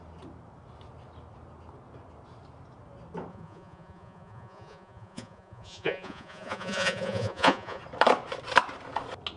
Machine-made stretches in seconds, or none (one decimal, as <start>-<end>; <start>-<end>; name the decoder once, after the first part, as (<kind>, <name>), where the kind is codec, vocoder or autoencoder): 3.3-7.8 (vocoder, Vocos)

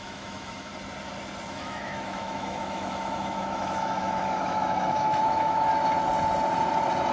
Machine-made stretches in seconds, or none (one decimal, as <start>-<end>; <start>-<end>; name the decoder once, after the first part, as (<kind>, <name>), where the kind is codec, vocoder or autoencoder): 0.0-0.7 (autoencoder, DAC-VAE); 1.5-5.7

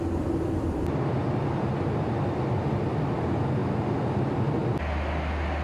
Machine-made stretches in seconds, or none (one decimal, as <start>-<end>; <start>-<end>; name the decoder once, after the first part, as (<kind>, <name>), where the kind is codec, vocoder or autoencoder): none

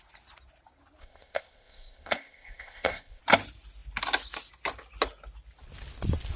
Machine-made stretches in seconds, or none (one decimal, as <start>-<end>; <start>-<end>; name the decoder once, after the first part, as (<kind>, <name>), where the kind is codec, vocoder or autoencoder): 1.0-3.2 (codec, ZipCodec)

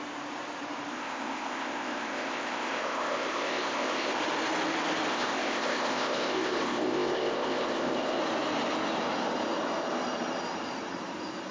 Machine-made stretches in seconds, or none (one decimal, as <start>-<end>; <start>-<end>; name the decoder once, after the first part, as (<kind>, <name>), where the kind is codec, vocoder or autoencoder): 0.9-4.2 (codec, ZipCodec); 5.1-8.2

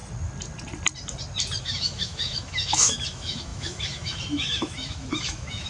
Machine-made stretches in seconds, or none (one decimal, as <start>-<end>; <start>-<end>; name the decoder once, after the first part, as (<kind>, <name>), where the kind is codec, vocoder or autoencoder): 1.6-5.7 (autoencoder, DAC-VAE)

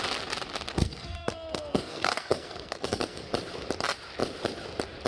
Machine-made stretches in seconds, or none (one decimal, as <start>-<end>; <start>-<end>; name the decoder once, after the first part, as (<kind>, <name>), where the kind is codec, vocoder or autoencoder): 0.7-3.3 (codec, SNAC)

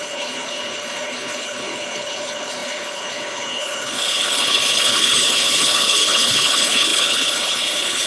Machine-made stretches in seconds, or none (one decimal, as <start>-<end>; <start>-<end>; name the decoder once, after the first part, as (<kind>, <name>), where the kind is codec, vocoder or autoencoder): 0.0-8.1 (codec, HILCodec)